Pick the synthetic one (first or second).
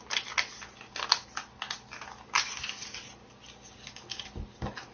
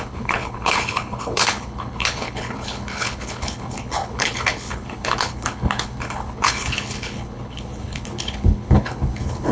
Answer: second